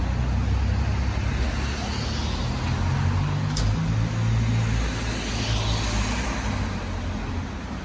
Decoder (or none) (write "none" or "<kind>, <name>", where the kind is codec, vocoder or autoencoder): none